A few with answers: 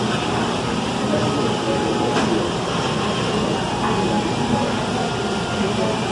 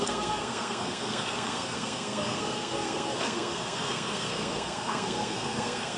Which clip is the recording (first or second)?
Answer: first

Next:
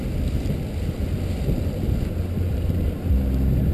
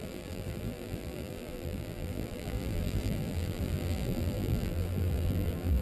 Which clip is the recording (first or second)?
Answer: first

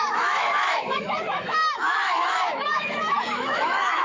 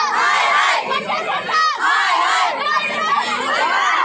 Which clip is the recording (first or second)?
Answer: second